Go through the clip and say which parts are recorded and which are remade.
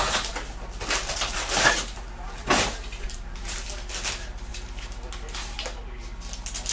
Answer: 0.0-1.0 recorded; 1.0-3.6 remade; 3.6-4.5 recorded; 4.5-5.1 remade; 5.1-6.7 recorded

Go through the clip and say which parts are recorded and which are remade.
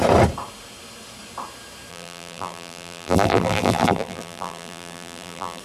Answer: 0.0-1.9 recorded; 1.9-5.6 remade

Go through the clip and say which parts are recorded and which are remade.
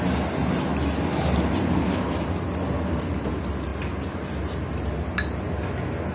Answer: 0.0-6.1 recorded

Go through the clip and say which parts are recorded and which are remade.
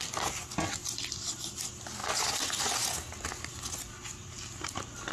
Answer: 0.0-0.8 recorded; 0.8-1.3 remade; 1.3-5.1 recorded